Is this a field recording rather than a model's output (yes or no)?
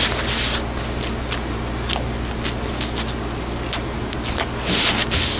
yes